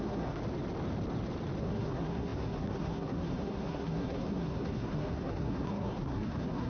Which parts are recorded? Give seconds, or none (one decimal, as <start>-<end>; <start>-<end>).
0.4-1.6